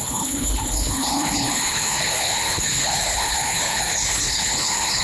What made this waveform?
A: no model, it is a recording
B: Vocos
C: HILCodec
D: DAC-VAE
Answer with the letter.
C